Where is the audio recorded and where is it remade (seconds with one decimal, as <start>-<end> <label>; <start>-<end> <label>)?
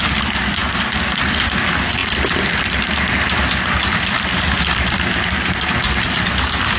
0.0-6.8 recorded